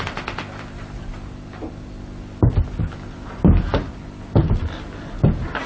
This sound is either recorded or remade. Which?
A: recorded